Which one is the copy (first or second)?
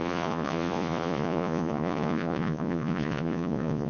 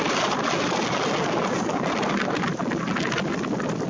first